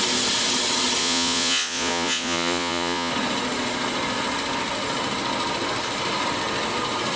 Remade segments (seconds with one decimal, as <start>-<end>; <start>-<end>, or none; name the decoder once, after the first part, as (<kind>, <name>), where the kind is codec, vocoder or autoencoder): 1.0-3.1 (vocoder, Vocos)